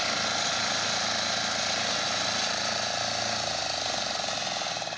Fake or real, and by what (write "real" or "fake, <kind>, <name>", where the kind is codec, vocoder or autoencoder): real